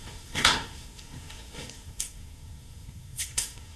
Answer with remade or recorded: remade